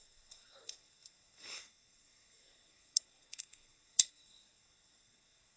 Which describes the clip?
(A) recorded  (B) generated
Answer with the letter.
B